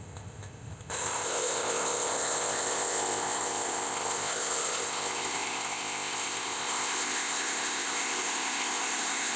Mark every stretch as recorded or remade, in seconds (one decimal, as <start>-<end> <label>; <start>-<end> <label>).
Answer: 0.0-9.4 remade